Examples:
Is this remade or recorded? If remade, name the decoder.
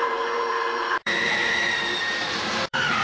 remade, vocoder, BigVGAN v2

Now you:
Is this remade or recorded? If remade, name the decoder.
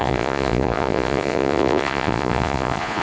remade, vocoder, Vocos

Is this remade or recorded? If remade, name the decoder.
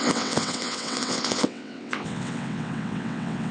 remade, vocoder, WaveNeXt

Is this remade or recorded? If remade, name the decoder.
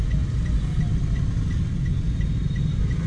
recorded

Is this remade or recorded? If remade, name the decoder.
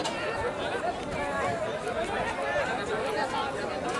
recorded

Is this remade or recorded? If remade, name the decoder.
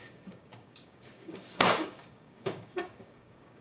remade, codec, DAC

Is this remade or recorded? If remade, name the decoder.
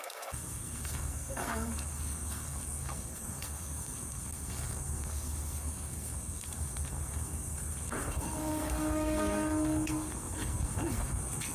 remade, codec, SNAC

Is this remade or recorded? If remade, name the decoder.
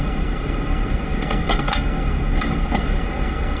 remade, codec, SNAC